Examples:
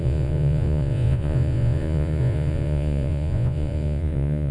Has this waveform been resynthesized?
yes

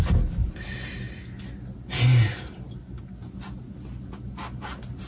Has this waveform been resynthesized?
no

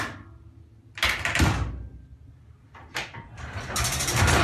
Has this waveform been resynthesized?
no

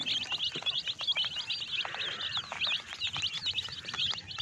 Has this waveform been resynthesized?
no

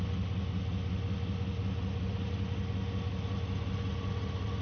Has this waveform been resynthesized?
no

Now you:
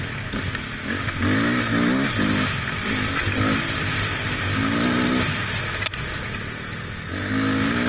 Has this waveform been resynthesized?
no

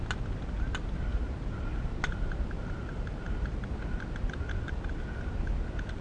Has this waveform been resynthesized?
no